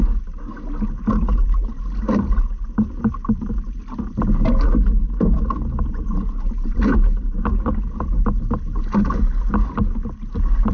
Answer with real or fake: real